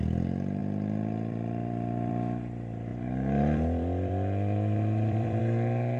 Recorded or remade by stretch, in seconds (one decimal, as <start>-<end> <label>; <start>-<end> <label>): 0.0-0.6 recorded; 0.6-2.1 remade; 2.1-2.9 recorded; 2.9-5.4 remade; 5.4-6.0 recorded